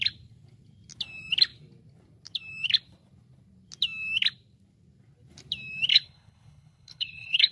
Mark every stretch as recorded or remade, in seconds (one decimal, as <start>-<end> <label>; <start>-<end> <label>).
0.0-5.9 recorded; 5.9-7.5 remade